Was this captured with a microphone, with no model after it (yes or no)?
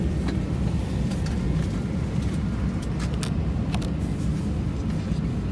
yes